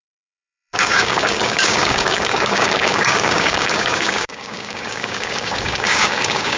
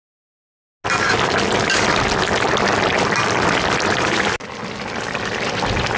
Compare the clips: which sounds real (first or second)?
second